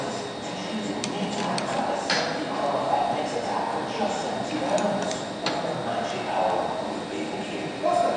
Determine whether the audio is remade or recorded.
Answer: recorded